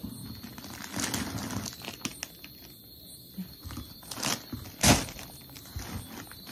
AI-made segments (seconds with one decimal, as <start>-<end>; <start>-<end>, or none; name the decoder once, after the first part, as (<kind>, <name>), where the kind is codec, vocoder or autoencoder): none